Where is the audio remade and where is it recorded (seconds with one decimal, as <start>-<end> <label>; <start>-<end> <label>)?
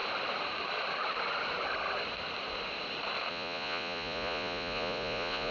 0.0-3.3 recorded; 3.3-5.5 remade